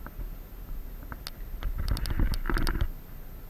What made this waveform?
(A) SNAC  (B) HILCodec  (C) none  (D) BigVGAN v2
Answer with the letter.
C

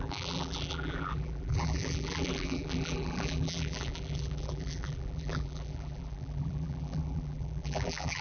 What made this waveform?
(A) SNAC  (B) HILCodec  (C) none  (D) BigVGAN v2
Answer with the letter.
D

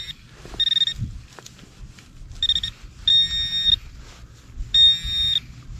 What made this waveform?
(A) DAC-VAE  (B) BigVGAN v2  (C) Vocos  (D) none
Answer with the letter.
D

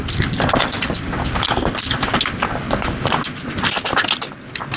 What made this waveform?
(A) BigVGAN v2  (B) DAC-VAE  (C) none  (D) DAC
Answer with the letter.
C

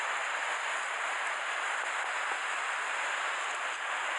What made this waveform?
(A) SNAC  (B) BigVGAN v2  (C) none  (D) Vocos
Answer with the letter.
C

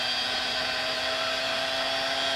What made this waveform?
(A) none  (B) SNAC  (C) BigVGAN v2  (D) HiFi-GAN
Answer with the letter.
A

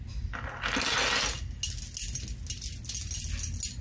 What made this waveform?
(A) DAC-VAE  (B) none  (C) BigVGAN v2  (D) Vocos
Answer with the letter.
B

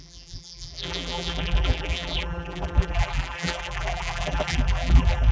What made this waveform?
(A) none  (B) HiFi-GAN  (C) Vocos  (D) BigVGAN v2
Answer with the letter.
D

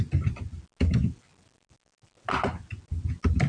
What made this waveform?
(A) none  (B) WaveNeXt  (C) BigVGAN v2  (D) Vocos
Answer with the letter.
A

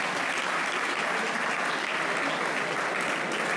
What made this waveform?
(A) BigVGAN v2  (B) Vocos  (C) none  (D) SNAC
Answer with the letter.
C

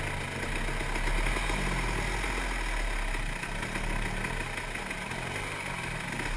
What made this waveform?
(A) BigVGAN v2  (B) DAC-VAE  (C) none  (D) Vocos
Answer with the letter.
C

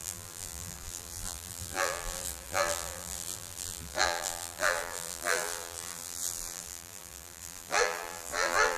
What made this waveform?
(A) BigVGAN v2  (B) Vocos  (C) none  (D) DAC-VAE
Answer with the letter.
A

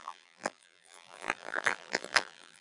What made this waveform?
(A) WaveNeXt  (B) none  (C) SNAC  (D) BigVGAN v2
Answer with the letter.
D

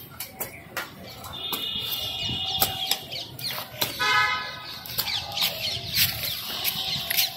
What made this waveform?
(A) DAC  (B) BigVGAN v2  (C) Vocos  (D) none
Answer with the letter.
D